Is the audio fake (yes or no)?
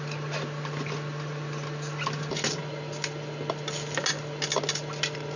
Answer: no